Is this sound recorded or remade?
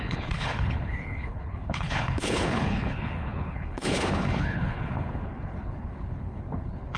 remade